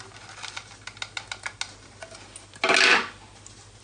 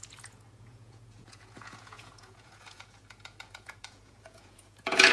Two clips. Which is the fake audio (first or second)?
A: second